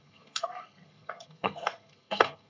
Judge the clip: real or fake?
fake